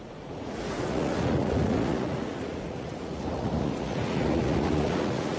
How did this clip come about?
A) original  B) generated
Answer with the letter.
B